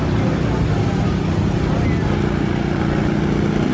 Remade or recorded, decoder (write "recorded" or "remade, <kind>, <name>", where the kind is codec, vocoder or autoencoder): recorded